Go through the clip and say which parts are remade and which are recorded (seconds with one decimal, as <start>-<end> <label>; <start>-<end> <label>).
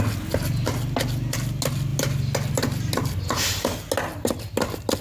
0.0-5.0 recorded